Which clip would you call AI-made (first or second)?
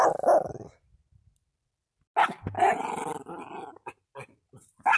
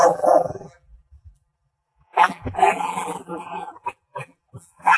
second